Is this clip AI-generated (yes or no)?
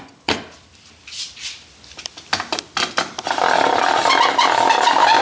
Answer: no